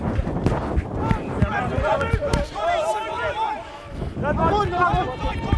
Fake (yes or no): no